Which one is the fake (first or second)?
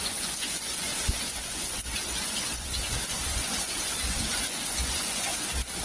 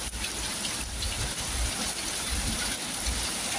first